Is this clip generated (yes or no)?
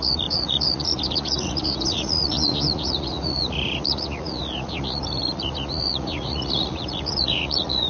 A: yes